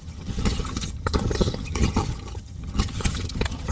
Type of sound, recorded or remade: remade